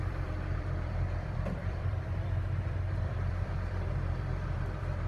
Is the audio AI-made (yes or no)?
yes